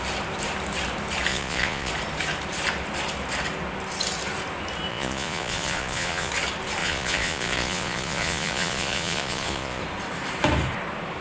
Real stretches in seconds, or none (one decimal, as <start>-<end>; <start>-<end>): 0.0-1.3; 1.9-4.9; 6.3-6.8; 9.8-11.2